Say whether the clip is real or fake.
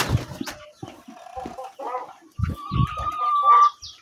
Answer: real